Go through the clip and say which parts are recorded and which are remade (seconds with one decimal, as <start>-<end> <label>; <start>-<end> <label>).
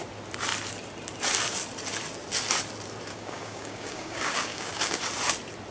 0.0-3.1 recorded; 3.1-5.0 remade; 5.0-5.7 recorded